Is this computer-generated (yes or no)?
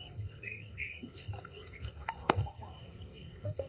yes